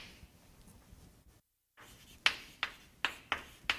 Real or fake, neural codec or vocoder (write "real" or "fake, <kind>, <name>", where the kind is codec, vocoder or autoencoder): real